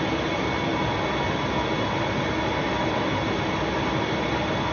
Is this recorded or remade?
recorded